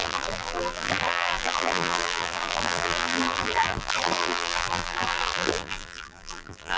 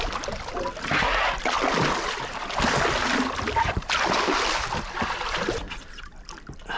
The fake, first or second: first